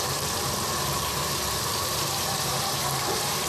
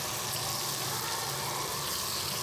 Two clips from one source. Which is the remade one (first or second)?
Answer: first